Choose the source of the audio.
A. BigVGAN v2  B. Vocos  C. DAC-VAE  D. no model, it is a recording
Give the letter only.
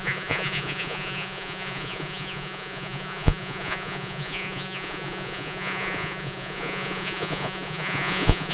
B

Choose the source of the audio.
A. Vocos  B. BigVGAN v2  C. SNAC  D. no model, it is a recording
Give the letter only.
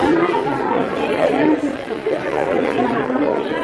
A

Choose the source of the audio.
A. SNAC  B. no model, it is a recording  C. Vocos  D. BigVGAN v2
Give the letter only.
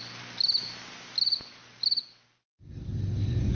B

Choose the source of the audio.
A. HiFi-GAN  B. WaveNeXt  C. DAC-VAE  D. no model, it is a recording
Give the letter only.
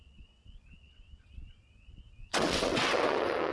B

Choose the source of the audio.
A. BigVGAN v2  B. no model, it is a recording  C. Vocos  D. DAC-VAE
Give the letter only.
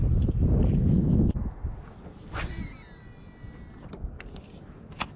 B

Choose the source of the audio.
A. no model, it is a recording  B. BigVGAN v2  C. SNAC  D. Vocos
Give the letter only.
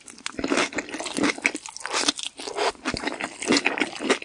A